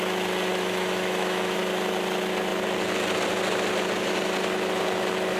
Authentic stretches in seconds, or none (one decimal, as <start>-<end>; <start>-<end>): 0.0-0.5; 1.6-5.4